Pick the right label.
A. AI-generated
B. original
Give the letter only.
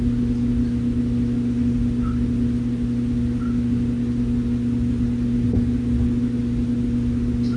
B